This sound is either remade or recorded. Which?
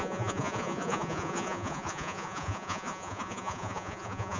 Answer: remade